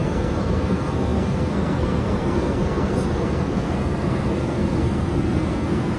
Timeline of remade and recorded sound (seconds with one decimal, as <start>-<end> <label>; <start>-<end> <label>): 0.0-6.0 remade

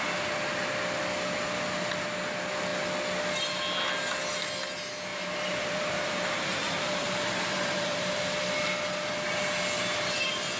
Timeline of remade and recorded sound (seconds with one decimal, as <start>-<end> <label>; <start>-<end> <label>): 0.0-5.1 recorded; 5.1-8.1 remade; 8.1-10.6 recorded

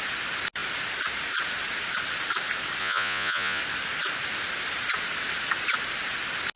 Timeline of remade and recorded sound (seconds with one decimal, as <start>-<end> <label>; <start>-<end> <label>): 0.0-2.8 recorded; 2.8-3.6 remade; 3.6-6.6 recorded

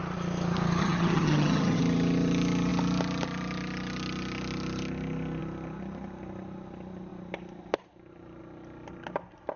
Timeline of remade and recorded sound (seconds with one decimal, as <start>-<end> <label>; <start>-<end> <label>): 0.0-0.8 recorded; 0.8-1.8 remade; 1.8-9.6 recorded

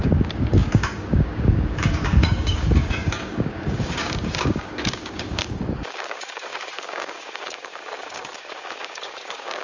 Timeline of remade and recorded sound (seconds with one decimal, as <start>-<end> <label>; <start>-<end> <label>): 0.0-9.6 remade

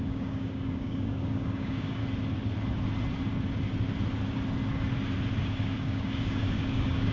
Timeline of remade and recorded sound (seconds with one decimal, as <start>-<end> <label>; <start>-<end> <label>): 0.0-2.0 remade; 2.0-5.4 recorded; 5.4-7.1 remade

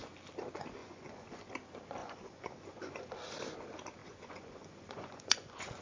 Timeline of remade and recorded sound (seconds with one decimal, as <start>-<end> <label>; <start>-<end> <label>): 0.0-0.8 recorded; 0.8-1.5 remade; 1.5-2.0 recorded; 2.0-3.1 remade; 3.1-4.0 recorded; 4.0-5.8 remade